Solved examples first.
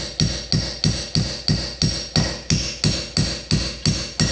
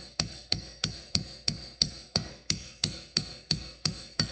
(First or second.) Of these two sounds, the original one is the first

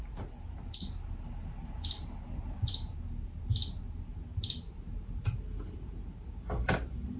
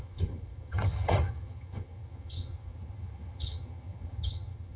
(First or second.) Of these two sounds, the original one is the first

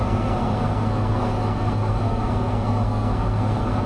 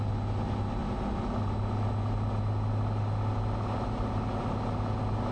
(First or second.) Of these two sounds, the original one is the second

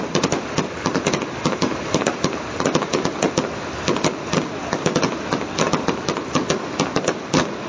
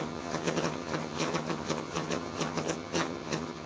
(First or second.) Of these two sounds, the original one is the first